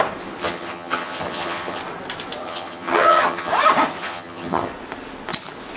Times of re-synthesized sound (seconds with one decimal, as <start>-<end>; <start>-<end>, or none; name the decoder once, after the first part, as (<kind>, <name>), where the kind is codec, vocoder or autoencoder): 0.4-1.8 (vocoder, HiFi-GAN); 2.4-3.5; 4.0-4.7